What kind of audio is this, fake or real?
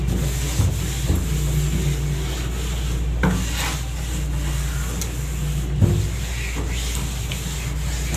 real